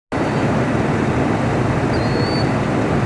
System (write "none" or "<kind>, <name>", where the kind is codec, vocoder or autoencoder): none